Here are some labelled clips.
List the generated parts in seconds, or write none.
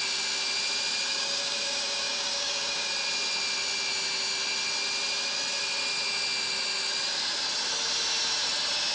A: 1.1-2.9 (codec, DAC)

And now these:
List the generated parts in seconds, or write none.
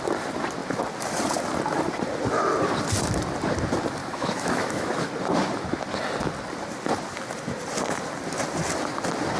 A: 4.0-5.1 (autoencoder, DAC-VAE)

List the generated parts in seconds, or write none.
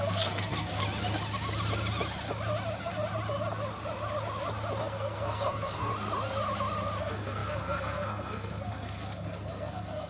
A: 0.0-0.8 (codec, SNAC); 4.8-5.9; 7.0-10.1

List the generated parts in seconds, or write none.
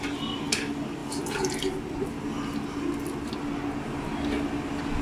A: none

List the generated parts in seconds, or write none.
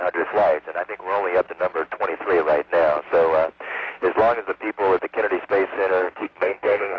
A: 6.0-7.0 (codec, SNAC)